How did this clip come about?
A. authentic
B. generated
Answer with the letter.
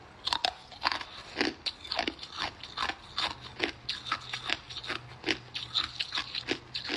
A